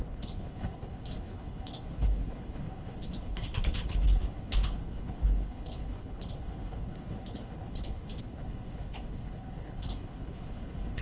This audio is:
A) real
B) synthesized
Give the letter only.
B